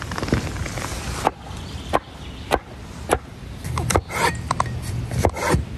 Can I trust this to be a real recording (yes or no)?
yes